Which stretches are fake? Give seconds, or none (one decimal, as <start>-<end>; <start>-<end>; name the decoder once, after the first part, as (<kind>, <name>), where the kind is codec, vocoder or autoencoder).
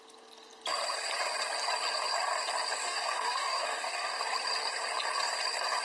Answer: 2.8-4.2 (codec, DAC)